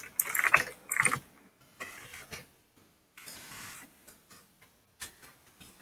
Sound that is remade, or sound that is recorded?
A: recorded